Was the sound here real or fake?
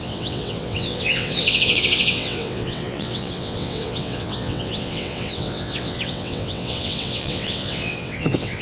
fake